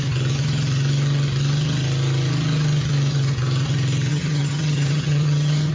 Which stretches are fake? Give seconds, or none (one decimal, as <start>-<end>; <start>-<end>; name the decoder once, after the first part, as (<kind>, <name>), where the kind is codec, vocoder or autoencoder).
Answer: 4.1-5.7 (vocoder, HiFi-GAN)